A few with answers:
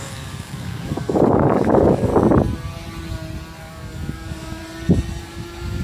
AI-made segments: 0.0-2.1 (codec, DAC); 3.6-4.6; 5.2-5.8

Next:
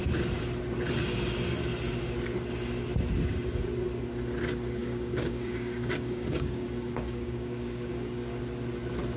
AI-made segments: 4.8-8.4 (codec, DAC)